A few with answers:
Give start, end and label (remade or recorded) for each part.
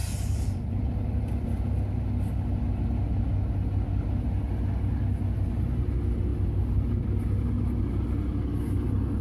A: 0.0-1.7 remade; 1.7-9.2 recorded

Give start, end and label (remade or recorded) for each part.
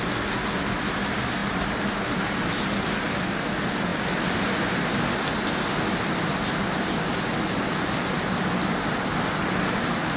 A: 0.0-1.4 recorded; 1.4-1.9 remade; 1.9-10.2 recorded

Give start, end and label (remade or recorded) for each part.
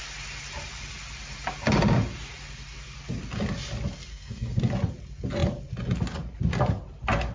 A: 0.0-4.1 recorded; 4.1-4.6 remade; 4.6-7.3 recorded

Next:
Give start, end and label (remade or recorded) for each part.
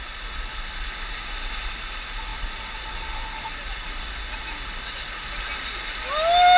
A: 0.0-6.6 recorded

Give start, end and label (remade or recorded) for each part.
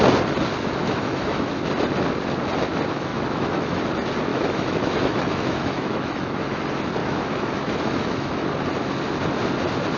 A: 0.0-0.8 recorded; 0.8-1.5 remade; 1.5-3.1 recorded; 3.1-3.8 remade; 3.8-4.3 recorded; 4.3-6.6 remade; 6.6-7.0 recorded; 7.0-8.5 remade; 8.5-10.0 recorded